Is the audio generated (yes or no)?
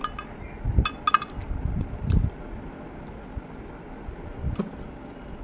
no